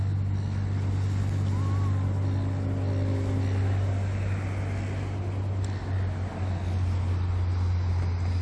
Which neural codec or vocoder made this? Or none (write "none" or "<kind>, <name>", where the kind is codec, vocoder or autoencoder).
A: none